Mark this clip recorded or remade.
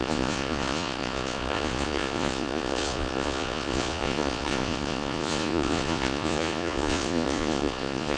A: remade